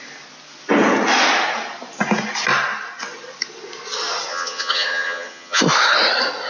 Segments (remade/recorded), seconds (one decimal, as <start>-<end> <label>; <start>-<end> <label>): 0.0-4.3 recorded; 4.3-5.6 remade; 5.6-6.5 recorded